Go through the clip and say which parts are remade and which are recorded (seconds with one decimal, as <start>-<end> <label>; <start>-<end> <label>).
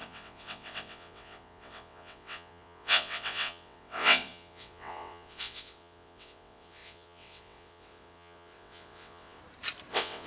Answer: 0.0-9.4 remade; 9.4-9.9 recorded; 9.9-10.3 remade